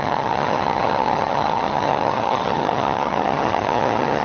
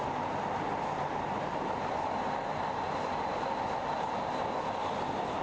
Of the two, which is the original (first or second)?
second